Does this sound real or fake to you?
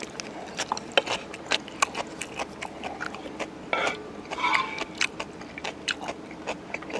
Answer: real